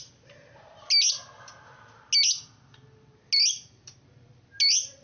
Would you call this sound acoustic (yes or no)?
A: yes